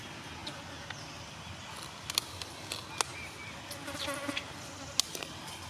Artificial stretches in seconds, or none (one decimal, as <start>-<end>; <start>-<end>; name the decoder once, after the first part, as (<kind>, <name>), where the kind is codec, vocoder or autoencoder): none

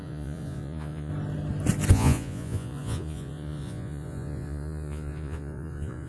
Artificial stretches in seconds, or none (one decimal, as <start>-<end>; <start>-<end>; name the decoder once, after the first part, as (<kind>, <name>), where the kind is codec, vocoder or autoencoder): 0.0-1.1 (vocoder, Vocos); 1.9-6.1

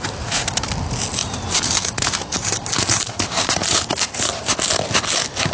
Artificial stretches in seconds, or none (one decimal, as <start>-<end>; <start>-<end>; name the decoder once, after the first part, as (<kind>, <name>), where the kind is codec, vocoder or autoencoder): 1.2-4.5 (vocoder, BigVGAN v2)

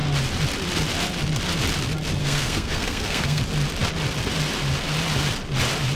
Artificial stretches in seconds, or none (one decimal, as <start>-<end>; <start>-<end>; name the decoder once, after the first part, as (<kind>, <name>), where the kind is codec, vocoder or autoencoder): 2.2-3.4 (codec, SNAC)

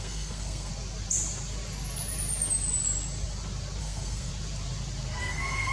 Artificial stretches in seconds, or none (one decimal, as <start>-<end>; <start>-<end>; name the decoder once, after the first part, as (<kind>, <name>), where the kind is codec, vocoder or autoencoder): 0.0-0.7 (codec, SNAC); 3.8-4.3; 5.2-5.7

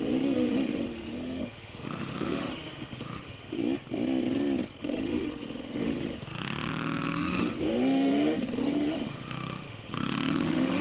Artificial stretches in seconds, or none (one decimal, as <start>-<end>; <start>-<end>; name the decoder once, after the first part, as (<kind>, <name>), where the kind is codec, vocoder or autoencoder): 0.0-3.6 (autoencoder, DAC-VAE); 4.8-10.8

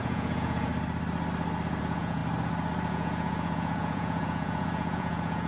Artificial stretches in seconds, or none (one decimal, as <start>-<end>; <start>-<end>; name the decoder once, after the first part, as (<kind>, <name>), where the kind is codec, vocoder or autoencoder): 0.0-0.7 (vocoder, Vocos); 1.8-2.2; 2.9-5.5

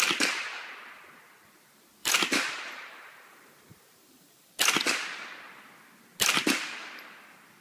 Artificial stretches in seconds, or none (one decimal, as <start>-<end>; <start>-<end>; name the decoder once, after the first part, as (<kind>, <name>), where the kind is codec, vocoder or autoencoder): 2.0-4.5 (vocoder, BigVGAN v2)